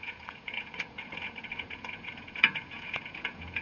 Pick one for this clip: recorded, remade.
remade